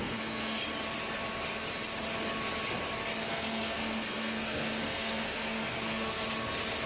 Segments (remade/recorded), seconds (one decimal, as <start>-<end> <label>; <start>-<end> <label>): 0.0-0.6 remade; 0.6-3.3 recorded; 3.3-6.2 remade; 6.2-6.9 recorded